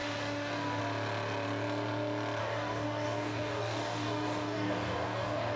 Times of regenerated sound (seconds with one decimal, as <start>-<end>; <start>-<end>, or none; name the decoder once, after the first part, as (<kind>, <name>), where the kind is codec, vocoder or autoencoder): 0.0-0.8 (codec, DAC); 2.4-5.6